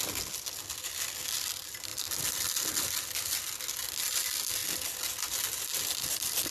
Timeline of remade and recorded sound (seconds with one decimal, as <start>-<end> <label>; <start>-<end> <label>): 0.0-6.5 recorded